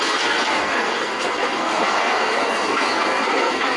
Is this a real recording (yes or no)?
no